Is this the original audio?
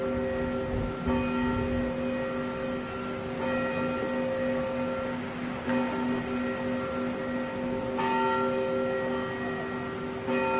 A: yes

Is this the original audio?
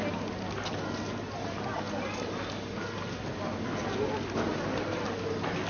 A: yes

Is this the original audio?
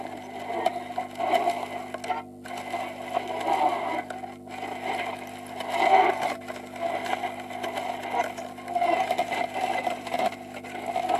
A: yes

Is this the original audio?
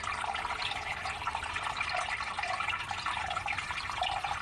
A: yes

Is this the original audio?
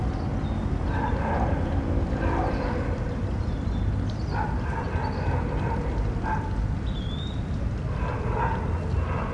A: yes